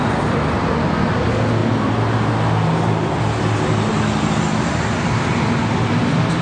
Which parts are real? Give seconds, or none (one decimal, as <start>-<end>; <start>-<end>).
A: 0.0-6.4